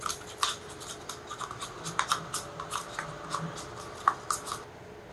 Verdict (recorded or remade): recorded